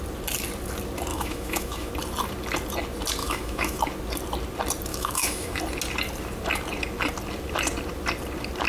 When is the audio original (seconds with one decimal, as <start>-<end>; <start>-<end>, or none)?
0.0-1.1; 1.9-3.2; 3.8-4.9; 5.6-8.7